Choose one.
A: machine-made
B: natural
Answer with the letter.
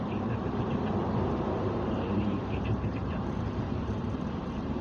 A